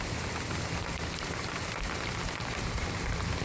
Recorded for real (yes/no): yes